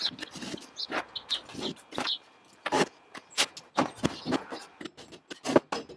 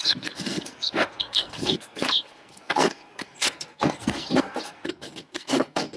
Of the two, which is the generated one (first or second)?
second